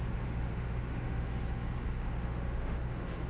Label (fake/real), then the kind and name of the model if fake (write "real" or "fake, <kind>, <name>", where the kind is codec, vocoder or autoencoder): fake, autoencoder, DAC-VAE